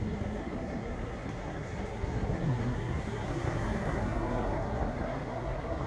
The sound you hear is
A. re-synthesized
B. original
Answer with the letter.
A